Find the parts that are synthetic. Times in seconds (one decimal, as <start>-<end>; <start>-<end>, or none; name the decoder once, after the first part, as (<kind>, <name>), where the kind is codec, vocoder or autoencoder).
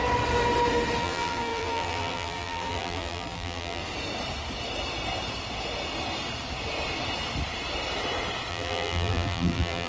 1.0-3.8 (vocoder, BigVGAN v2); 8.5-9.9